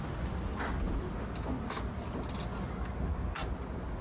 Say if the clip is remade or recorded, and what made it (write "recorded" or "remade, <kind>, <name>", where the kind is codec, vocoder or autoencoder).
recorded